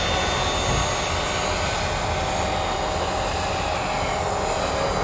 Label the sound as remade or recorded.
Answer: recorded